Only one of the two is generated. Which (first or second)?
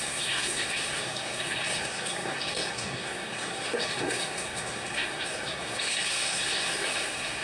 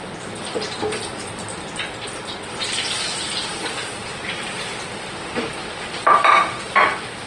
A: first